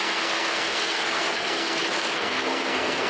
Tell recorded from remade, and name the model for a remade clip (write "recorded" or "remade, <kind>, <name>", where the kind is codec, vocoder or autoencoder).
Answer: remade, codec, SNAC